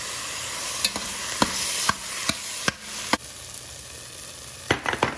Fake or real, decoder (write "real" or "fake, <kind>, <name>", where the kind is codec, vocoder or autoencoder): real